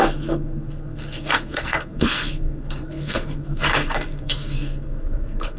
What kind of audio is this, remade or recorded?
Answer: remade